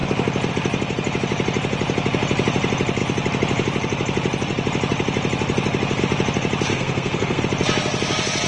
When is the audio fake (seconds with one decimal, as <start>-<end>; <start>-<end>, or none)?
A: 6.7-7.4